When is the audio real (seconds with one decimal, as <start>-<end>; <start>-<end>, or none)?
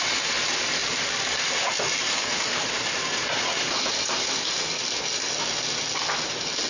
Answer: 0.0-2.1; 2.7-6.7